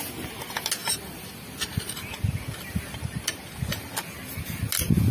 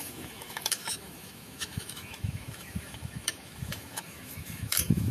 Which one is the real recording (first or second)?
first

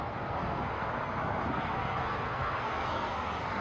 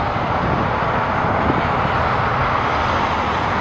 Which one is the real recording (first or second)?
second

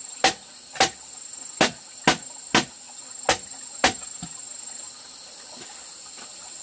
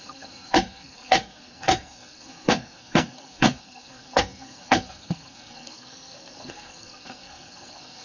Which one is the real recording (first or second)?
first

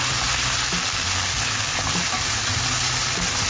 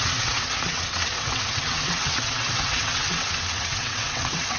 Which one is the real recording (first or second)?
first